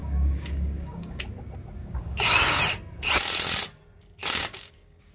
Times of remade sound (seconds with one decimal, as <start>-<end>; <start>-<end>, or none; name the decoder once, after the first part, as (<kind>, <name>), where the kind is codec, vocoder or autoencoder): 0.0-1.2 (codec, DAC); 1.8-2.6; 4.2-5.1